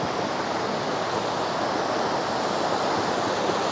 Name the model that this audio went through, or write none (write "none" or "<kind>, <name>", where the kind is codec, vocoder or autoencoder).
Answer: none